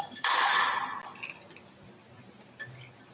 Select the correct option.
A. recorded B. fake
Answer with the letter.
A